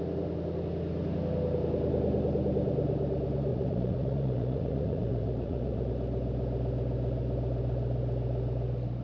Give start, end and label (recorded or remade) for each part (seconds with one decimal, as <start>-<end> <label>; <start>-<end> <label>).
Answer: 0.0-3.5 recorded; 3.5-5.9 remade; 5.9-9.0 recorded